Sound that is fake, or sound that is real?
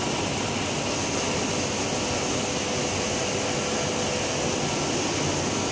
real